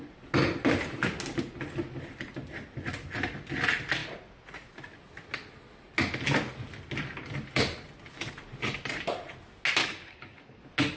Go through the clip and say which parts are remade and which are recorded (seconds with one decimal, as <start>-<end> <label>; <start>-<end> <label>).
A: 0.0-9.8 recorded; 9.8-10.6 remade; 10.6-11.0 recorded